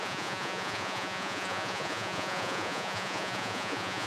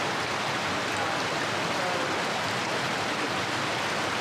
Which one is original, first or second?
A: second